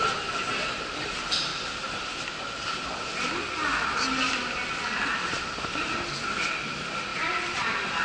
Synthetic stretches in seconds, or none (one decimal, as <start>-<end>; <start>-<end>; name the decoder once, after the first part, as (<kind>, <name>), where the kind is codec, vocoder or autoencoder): none